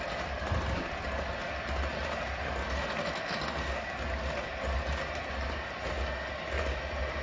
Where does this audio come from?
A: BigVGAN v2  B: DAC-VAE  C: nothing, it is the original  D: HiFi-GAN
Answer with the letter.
C